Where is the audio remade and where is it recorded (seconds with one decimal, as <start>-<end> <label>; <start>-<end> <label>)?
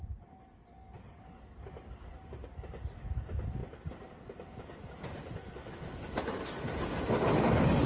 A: 0.0-2.4 recorded; 2.4-2.9 remade; 2.9-3.6 recorded; 3.6-6.4 remade; 6.4-7.9 recorded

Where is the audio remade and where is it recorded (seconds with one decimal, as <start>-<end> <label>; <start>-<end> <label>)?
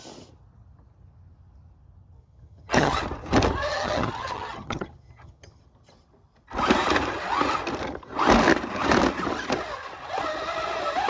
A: 0.0-2.2 recorded; 2.2-3.0 remade; 3.0-3.7 recorded; 3.7-5.6 remade; 5.6-11.1 recorded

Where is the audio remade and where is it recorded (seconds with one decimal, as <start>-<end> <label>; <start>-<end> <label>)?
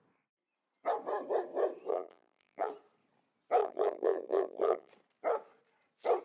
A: 0.0-1.9 recorded; 1.9-2.7 remade; 2.7-3.6 recorded; 3.6-4.9 remade; 4.9-6.2 recorded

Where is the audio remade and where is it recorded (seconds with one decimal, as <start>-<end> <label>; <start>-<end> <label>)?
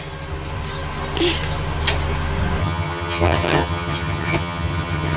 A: 0.0-2.6 recorded; 2.6-5.2 remade